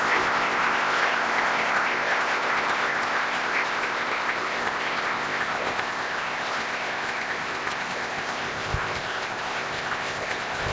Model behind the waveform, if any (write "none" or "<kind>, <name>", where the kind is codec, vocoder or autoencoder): codec, ZipCodec